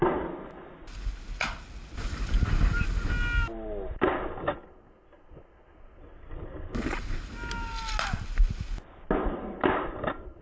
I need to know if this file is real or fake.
real